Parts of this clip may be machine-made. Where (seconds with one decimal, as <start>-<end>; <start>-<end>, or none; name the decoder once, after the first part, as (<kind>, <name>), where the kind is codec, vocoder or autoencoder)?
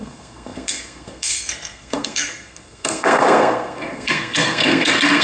0.0-5.2 (codec, SNAC)